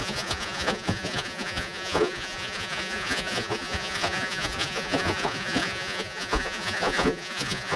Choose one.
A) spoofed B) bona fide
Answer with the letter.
A